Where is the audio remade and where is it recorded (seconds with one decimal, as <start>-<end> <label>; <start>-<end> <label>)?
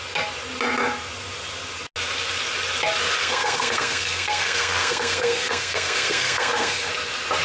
0.0-3.2 recorded; 3.2-6.9 remade; 6.9-7.4 recorded